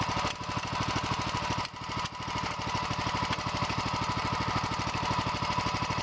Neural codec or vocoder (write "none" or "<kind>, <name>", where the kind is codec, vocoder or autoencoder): none